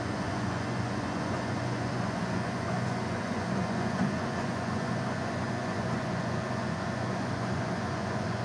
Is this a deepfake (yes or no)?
yes